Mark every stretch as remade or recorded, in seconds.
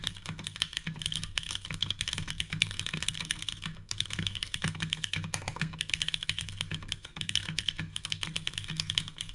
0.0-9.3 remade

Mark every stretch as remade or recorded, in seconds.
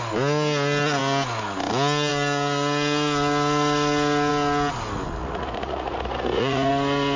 0.0-5.2 recorded; 5.2-6.7 remade; 6.7-7.2 recorded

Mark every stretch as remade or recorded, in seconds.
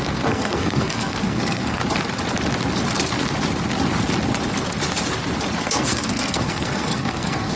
0.0-1.8 remade; 1.8-5.6 recorded; 5.6-7.6 remade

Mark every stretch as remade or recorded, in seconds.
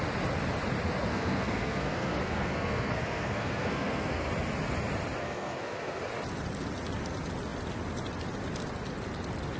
0.0-1.1 recorded; 1.1-4.3 remade; 4.3-5.2 recorded; 5.2-6.0 remade; 6.0-9.6 recorded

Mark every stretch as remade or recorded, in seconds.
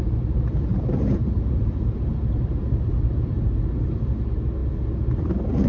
0.0-0.7 recorded; 0.7-4.1 remade; 4.1-5.7 recorded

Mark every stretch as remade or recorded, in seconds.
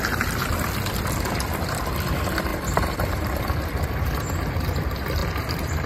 0.0-2.5 recorded; 2.5-3.4 remade; 3.4-5.2 recorded; 5.2-5.9 remade